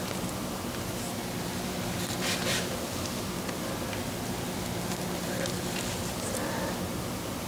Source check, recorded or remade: remade